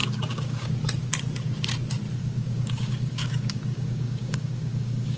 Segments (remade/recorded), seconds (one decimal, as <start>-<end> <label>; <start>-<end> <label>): 0.0-0.7 remade; 0.7-2.2 recorded; 2.2-5.2 remade